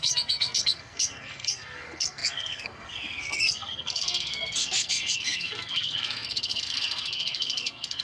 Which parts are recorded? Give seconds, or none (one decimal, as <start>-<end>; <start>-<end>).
none